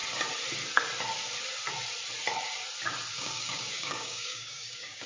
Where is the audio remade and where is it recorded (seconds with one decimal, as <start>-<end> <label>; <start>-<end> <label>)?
0.0-3.1 recorded; 3.1-5.1 remade